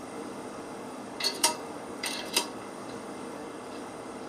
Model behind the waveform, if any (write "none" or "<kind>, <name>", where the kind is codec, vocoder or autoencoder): codec, DAC